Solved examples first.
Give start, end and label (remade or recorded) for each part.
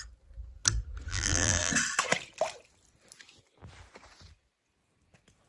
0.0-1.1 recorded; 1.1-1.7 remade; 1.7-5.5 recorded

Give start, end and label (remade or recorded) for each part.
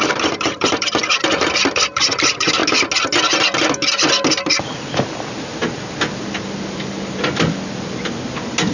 0.0-2.6 remade; 2.6-4.5 recorded; 4.5-5.6 remade; 5.6-8.7 recorded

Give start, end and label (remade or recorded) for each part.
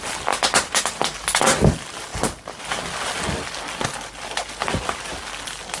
0.0-5.8 recorded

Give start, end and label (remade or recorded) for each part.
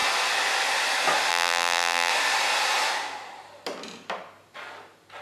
0.0-1.3 recorded; 1.3-2.1 remade; 2.1-5.2 recorded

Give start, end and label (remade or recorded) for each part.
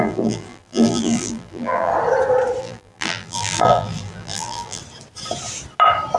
0.0-1.9 remade; 1.9-2.6 recorded; 2.6-4.8 remade; 4.8-6.2 recorded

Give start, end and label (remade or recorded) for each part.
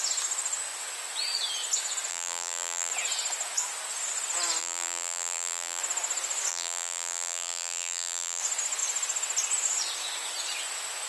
0.0-2.1 recorded; 2.1-2.9 remade; 2.9-4.6 recorded; 4.6-5.8 remade; 5.8-6.5 recorded; 6.5-8.4 remade; 8.4-11.1 recorded